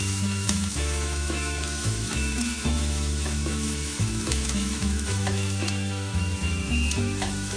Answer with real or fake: fake